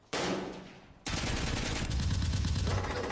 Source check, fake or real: fake